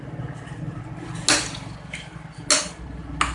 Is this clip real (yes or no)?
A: yes